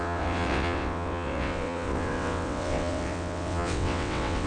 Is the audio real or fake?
fake